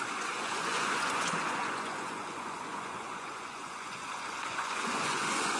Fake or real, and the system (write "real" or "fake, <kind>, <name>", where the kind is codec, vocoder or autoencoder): fake, vocoder, Vocos